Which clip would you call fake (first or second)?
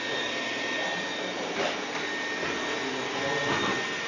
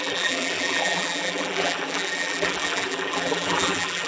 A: second